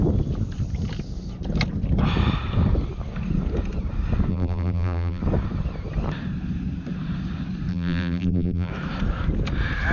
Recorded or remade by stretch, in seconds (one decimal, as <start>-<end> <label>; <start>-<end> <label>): 0.0-4.3 recorded; 4.3-5.2 remade; 5.2-7.7 recorded; 7.7-8.7 remade; 8.7-9.9 recorded